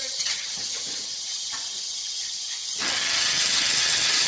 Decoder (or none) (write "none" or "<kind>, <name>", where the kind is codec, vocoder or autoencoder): vocoder, HiFi-GAN